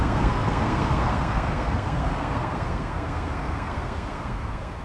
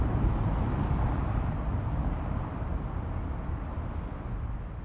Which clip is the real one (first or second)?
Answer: second